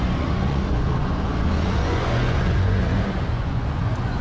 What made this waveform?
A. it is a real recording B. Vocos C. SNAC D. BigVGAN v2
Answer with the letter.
B